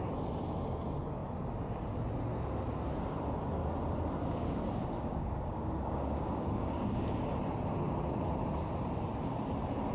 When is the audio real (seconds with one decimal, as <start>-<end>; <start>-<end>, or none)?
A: 0.0-4.2; 7.4-9.9